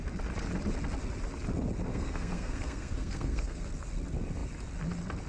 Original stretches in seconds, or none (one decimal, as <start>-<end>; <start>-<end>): 0.0-1.9; 3.7-5.3